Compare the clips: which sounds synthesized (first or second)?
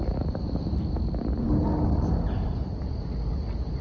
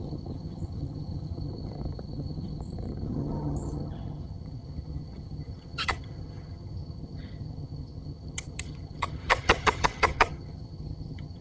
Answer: second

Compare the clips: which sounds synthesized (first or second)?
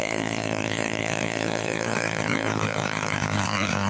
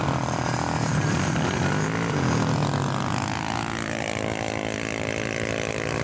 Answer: first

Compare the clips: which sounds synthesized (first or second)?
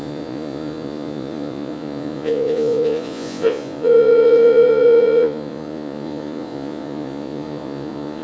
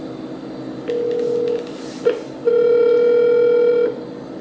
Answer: first